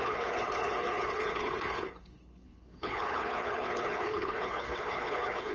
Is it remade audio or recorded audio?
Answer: remade